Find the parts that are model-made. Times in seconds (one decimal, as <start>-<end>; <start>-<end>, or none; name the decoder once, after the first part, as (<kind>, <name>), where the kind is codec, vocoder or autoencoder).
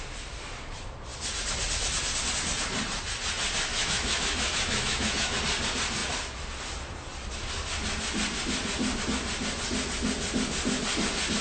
3.7-5.4 (autoencoder, DAC-VAE)